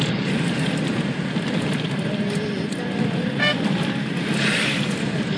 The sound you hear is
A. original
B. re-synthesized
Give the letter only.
A